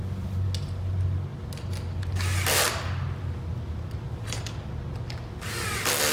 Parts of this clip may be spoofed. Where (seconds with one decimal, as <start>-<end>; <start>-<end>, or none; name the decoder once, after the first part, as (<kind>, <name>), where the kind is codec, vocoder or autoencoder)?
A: none